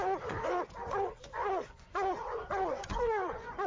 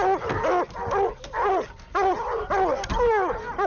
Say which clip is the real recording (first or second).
second